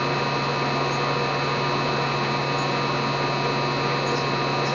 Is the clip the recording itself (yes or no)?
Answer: yes